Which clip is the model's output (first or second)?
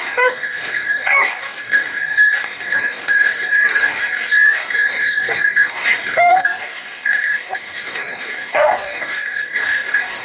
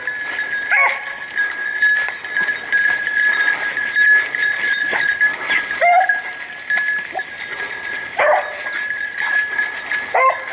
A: first